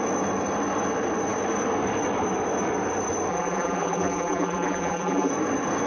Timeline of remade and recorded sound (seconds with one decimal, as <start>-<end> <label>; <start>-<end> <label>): 0.0-3.3 recorded; 3.3-5.3 remade; 5.3-5.9 recorded